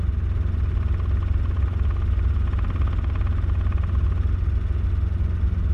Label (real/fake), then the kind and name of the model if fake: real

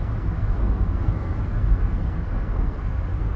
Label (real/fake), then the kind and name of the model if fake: fake, codec, SNAC